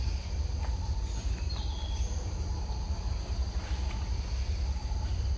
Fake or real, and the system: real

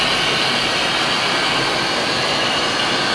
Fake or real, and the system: real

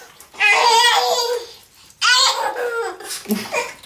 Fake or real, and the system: real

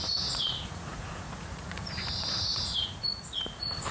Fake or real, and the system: fake, vocoder, Vocos